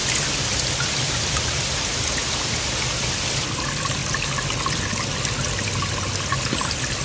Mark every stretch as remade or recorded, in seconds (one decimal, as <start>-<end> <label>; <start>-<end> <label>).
0.0-7.0 recorded